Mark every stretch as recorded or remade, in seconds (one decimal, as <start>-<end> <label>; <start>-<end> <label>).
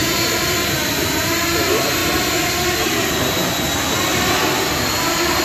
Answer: 0.0-2.0 remade; 2.0-5.4 recorded